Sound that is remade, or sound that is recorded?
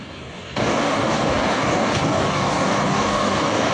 remade